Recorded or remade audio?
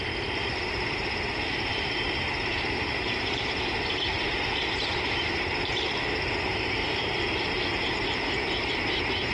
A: remade